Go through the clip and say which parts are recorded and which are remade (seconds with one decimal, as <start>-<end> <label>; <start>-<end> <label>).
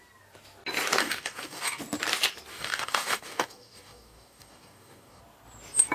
0.0-1.0 recorded; 1.0-1.8 remade; 1.8-2.5 recorded; 2.5-5.2 remade; 5.2-5.9 recorded